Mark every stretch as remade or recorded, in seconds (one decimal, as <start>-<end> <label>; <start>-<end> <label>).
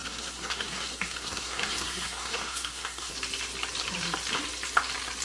0.0-3.1 remade; 3.1-5.2 recorded